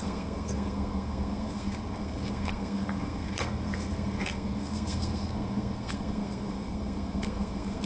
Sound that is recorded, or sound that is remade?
remade